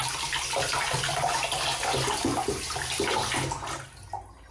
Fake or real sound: real